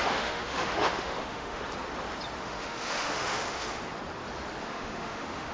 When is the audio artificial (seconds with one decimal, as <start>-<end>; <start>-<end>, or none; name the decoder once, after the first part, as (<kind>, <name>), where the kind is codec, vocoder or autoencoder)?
0.0-1.6 (autoencoder, DAC-VAE); 2.4-3.8; 4.6-5.5